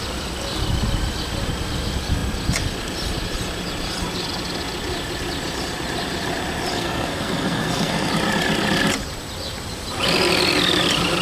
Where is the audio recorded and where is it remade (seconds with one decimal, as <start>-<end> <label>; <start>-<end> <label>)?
0.0-6.7 recorded; 6.7-8.1 remade; 8.1-11.2 recorded